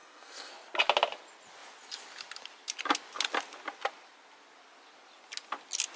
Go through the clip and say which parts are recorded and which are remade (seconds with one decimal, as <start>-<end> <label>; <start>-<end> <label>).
0.0-0.5 remade; 0.5-6.0 recorded